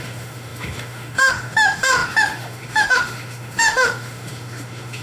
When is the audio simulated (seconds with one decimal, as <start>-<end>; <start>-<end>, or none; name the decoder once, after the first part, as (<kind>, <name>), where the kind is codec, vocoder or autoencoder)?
0.0-5.0 (autoencoder, DAC-VAE)